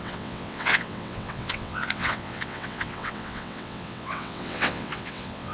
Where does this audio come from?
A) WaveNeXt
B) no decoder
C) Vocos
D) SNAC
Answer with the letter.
A